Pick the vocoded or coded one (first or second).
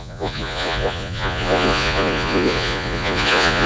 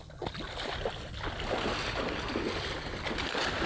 first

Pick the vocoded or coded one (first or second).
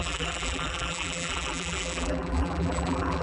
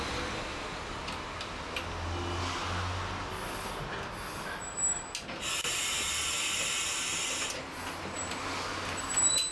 first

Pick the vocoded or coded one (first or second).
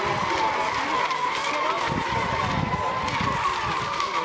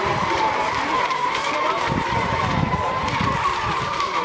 second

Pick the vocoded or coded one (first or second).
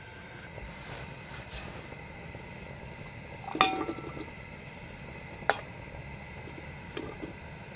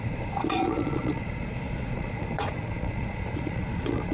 second